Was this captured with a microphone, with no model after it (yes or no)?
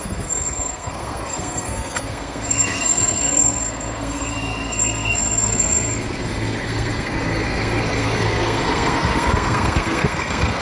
no